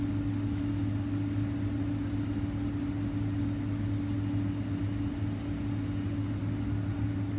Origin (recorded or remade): recorded